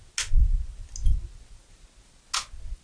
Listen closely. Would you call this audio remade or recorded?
recorded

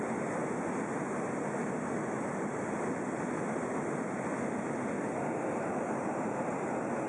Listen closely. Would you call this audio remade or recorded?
recorded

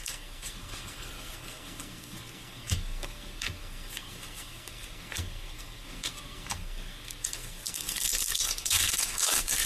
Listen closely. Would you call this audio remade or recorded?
remade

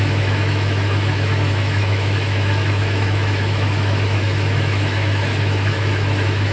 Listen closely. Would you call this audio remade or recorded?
remade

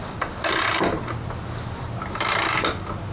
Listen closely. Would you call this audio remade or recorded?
recorded